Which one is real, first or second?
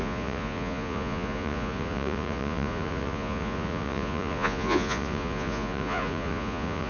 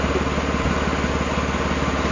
second